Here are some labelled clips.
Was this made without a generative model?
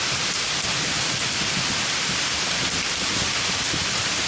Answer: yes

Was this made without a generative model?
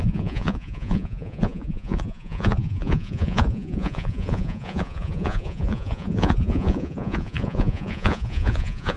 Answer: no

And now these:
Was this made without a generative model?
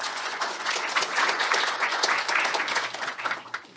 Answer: no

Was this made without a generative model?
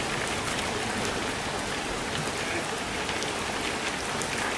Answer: yes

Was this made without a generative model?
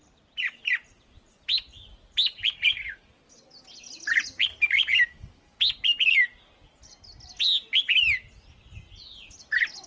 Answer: yes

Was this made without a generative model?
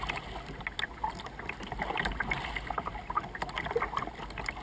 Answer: yes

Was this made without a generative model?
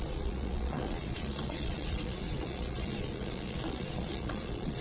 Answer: no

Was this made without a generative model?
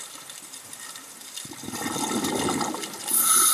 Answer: no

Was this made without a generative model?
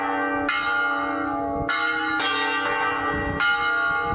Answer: yes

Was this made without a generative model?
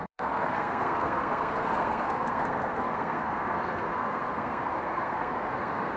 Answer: no